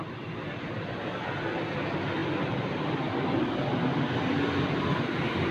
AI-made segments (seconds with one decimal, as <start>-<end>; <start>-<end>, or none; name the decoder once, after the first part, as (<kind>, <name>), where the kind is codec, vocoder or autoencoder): none